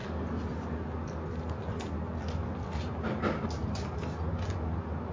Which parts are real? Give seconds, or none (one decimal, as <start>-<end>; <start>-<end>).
0.0-5.1